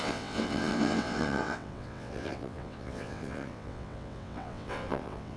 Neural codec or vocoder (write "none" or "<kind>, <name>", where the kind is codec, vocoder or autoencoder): vocoder, WaveNeXt